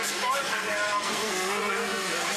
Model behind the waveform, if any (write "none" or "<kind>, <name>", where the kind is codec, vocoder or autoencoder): codec, SNAC